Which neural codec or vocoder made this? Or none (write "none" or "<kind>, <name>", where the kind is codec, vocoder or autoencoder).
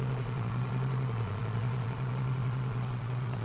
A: vocoder, Vocos